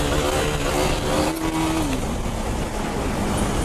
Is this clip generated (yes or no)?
no